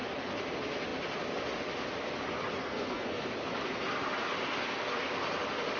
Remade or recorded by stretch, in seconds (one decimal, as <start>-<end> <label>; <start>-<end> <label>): 0.0-2.6 recorded; 2.6-3.2 remade; 3.2-5.8 recorded